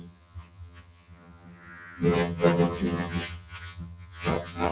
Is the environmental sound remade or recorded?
remade